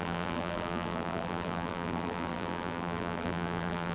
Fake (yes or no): yes